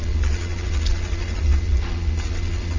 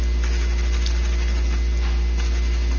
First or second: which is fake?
first